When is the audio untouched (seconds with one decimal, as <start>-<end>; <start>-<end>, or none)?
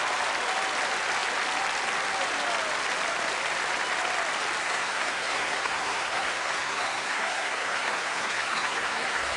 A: 0.0-4.6